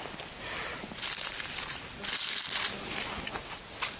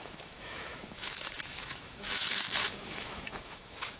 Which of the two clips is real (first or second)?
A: first